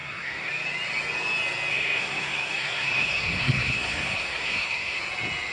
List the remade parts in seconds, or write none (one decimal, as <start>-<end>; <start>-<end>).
0.0-0.5; 1.7-5.0